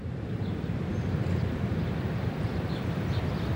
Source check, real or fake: fake